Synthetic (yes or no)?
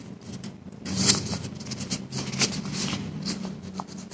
no